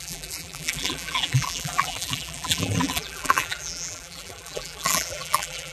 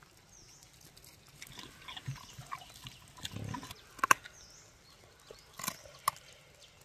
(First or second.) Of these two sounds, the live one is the second